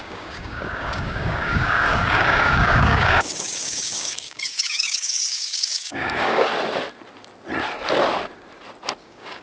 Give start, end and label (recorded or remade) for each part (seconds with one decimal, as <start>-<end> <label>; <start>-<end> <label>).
0.0-6.5 remade; 6.5-9.0 recorded; 9.0-9.4 remade